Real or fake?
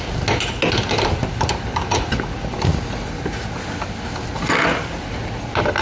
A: real